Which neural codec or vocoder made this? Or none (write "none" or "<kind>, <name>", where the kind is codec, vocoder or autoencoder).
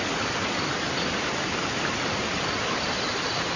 none